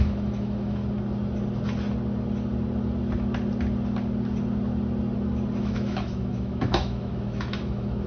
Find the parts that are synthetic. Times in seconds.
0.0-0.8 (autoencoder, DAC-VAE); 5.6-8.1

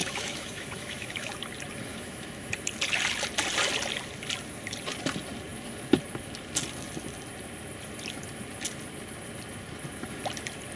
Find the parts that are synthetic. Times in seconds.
0.0-1.3 (autoencoder, DAC-VAE); 1.9-2.5